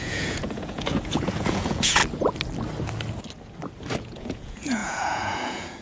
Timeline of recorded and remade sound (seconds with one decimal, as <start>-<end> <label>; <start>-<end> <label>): 0.0-2.0 remade; 2.0-4.0 recorded; 4.0-5.8 remade